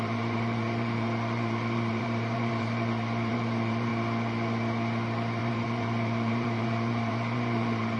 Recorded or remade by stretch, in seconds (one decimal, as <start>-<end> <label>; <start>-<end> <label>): 0.0-3.9 remade; 3.9-5.4 recorded; 5.4-8.0 remade